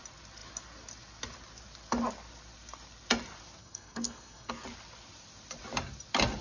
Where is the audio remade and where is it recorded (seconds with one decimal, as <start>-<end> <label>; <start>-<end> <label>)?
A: 0.0-3.6 recorded; 3.6-4.5 remade; 4.5-6.4 recorded